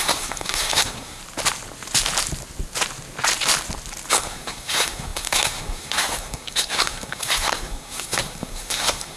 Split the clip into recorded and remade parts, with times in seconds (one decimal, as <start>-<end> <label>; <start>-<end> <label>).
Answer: 0.0-1.2 remade; 1.2-4.1 recorded; 4.1-9.2 remade